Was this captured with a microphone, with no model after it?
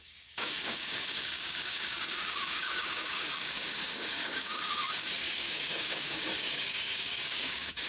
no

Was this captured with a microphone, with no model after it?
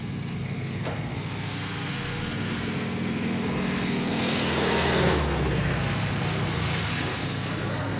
no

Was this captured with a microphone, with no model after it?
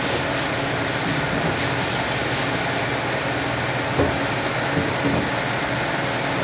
yes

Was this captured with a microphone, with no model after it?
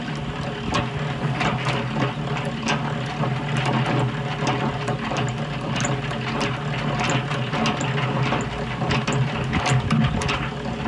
yes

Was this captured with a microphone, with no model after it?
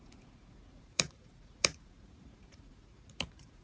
no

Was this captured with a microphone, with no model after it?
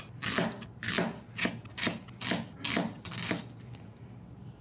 yes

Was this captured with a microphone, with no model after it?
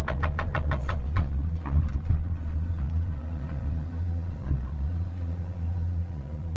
no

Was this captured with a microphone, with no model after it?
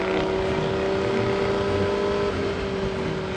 yes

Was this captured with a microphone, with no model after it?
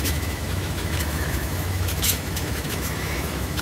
no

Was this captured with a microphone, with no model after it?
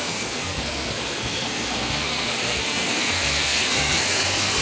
no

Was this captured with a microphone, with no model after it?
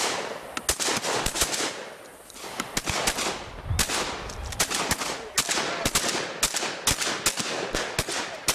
yes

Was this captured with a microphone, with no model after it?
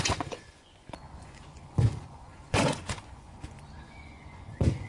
no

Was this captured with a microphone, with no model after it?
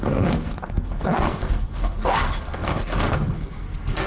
no